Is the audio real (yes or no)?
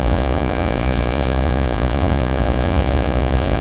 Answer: no